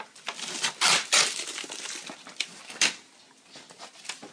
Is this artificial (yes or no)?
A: no